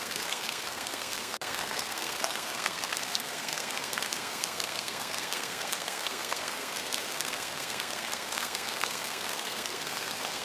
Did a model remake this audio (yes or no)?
yes